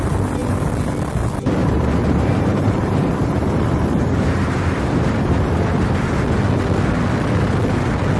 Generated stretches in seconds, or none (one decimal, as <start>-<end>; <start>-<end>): 1.6-6.1